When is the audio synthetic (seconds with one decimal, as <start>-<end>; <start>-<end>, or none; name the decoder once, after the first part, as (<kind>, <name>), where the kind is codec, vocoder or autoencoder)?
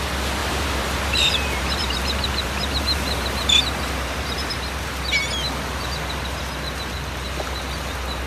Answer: 0.4-4.5 (vocoder, BigVGAN v2)